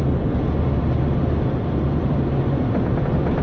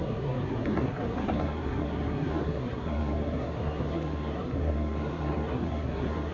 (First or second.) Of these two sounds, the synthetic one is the second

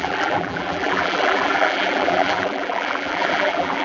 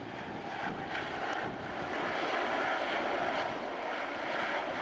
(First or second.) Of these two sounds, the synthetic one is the first